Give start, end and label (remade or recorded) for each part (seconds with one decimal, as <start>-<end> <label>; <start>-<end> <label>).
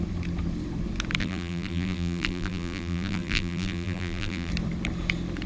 0.0-1.2 recorded; 1.2-4.5 remade; 4.5-5.5 recorded